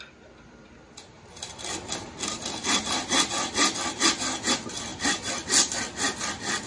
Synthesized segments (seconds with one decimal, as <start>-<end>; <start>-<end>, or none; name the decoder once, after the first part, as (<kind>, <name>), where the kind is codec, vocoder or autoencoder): none